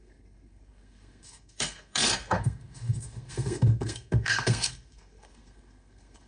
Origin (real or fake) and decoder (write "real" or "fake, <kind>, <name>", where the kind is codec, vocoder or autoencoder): fake, codec, SNAC